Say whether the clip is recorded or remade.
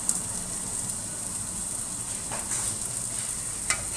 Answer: recorded